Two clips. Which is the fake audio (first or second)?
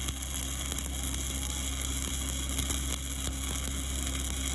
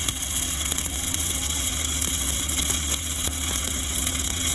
second